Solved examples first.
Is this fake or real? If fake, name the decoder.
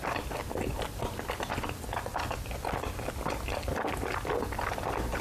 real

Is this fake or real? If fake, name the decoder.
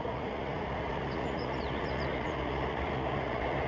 fake, vocoder, Vocos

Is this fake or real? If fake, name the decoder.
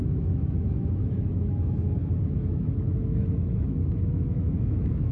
fake, autoencoder, DAC-VAE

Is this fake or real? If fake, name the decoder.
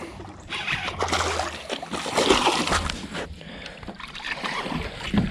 real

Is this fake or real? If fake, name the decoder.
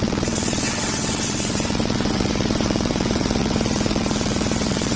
fake, vocoder, WaveNeXt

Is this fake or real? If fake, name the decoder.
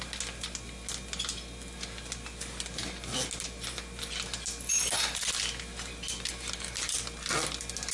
real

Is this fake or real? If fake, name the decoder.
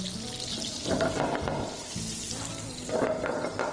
real